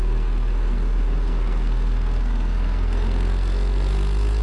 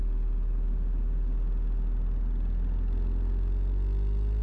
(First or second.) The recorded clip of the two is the second